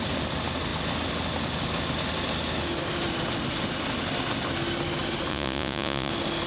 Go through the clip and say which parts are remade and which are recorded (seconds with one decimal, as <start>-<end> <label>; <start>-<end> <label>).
0.0-5.3 recorded; 5.3-6.1 remade; 6.1-6.5 recorded